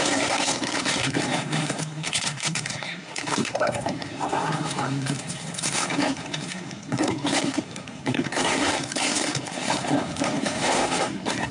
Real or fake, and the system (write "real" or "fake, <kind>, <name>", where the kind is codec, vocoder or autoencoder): fake, codec, SNAC